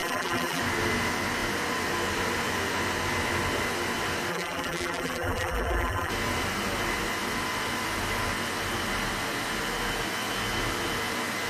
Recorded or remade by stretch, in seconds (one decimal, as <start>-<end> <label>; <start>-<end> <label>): 0.0-0.6 remade; 0.6-4.3 recorded; 4.3-6.1 remade; 6.1-11.5 recorded